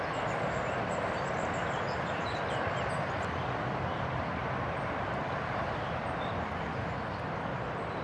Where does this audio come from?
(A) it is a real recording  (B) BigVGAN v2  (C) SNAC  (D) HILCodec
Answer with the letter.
A